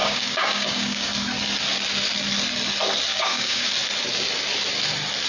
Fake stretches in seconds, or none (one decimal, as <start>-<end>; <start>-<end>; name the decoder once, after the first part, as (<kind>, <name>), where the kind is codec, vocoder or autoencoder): 0.0-1.1 (codec, DAC); 3.1-3.7